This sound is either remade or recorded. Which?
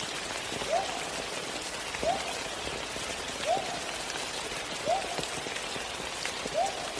recorded